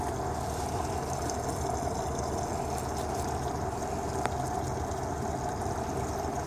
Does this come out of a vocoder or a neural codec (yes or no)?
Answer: no